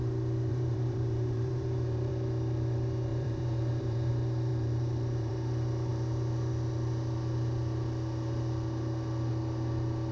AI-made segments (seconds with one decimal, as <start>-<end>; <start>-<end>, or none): 0.5-2.1; 3.1-4.1; 4.5-5.3